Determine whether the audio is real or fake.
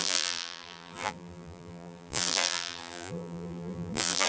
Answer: fake